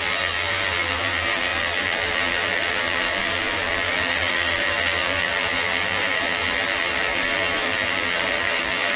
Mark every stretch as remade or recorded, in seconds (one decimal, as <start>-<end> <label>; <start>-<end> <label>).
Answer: 0.0-9.0 remade